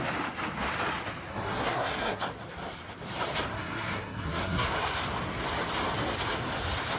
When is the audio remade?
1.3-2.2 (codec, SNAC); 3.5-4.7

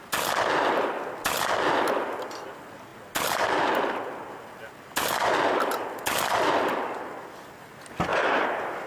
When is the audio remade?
none

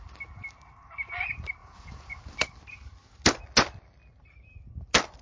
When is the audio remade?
1.6-2.2 (vocoder, Vocos)

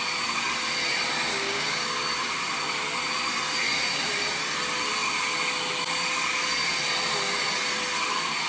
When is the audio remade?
1.3-1.9 (codec, DAC)

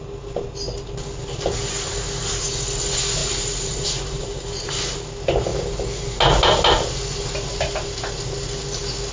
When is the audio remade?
3.2-4.7 (vocoder, BigVGAN v2)